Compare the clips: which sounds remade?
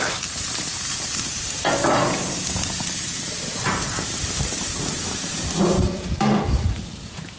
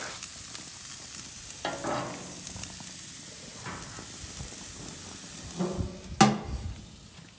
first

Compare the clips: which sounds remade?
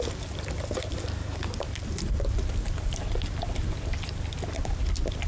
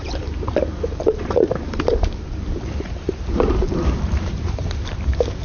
second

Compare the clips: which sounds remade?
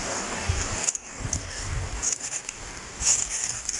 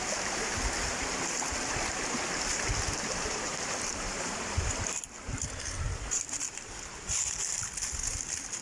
first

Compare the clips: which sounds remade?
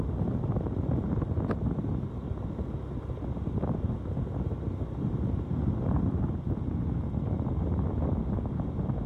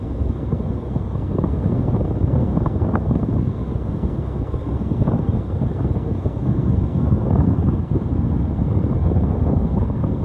second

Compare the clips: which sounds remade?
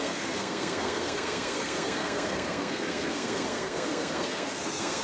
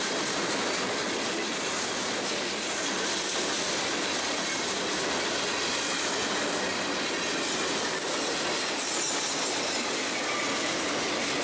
first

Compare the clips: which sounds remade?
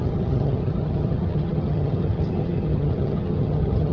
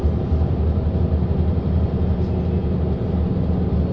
first